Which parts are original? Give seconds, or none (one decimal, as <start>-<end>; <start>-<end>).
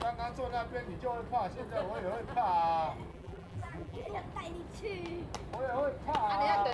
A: 0.0-3.1; 4.1-6.7